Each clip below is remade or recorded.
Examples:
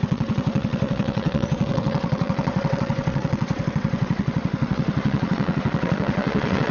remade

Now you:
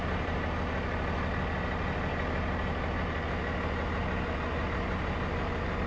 recorded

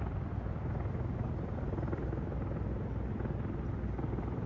recorded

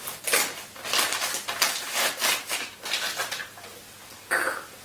recorded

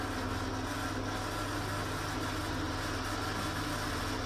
recorded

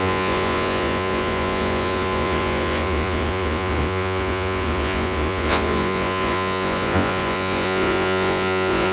remade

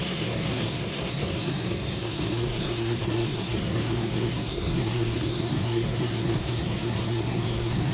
remade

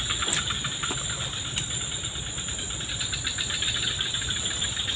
remade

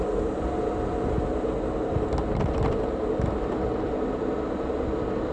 recorded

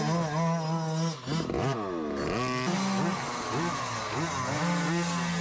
recorded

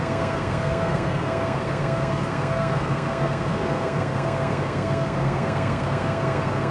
remade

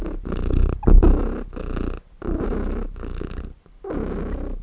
recorded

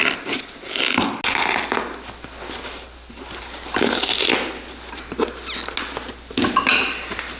recorded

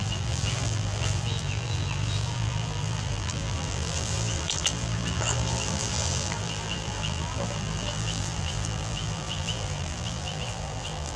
remade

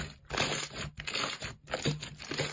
recorded